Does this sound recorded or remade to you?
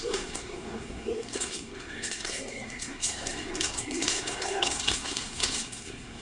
remade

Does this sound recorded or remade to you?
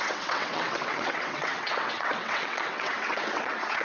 remade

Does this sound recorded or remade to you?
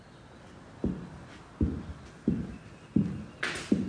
recorded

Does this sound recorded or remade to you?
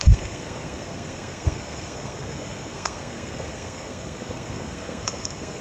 remade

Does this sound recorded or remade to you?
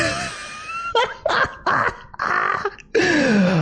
recorded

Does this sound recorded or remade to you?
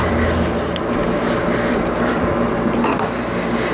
remade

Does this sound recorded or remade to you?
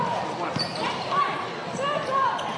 recorded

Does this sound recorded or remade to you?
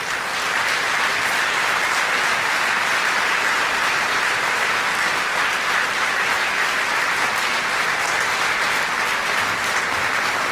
recorded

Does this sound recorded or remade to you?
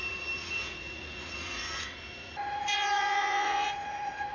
remade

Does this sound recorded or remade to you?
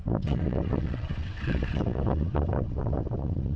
remade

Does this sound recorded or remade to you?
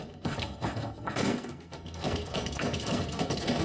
remade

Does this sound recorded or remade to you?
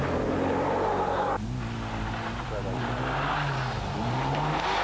recorded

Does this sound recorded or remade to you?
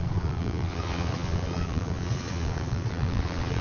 remade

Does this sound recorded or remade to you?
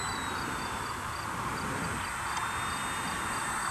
recorded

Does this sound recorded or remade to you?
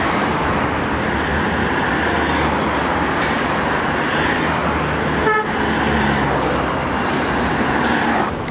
recorded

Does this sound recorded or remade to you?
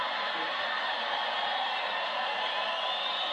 remade